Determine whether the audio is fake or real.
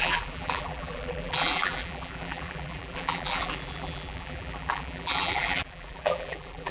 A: fake